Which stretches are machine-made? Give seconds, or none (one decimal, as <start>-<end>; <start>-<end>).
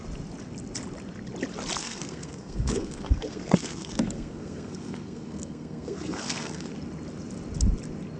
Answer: 1.8-6.7